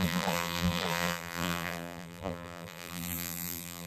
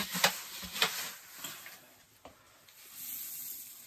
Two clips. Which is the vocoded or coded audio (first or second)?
first